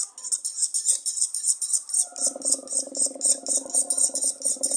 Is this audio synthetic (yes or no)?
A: no